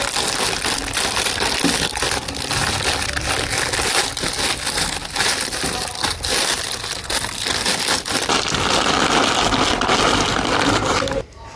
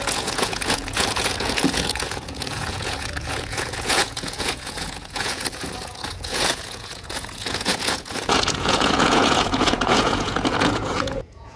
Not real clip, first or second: second